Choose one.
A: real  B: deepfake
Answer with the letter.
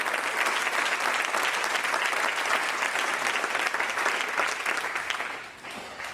A